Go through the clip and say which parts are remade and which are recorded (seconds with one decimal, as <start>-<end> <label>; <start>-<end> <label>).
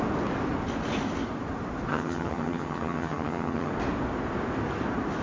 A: 0.0-1.9 recorded; 1.9-3.7 remade; 3.7-5.2 recorded